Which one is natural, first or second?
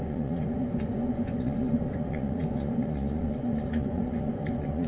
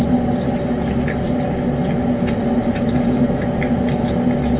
second